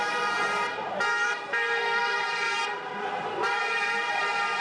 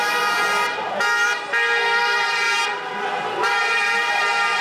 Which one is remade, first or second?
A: first